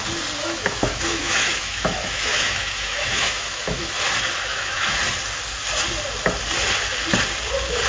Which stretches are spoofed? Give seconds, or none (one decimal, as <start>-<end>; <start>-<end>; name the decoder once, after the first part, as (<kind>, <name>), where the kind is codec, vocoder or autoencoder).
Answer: 0.4-3.9 (autoencoder, DAC-VAE); 4.5-5.0